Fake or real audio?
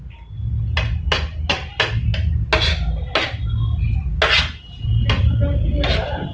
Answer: real